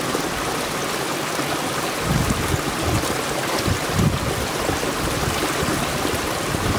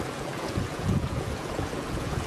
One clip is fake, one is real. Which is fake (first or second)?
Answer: second